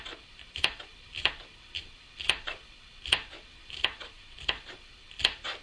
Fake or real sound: real